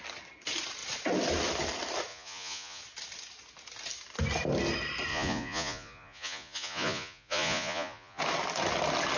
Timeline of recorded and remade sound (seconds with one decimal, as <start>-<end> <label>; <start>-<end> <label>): 0.0-2.1 recorded; 2.1-2.8 remade; 2.8-5.1 recorded; 5.1-8.2 remade; 8.2-9.2 recorded